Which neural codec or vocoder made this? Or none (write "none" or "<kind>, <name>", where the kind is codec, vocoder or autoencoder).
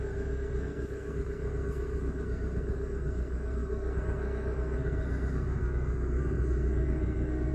codec, SNAC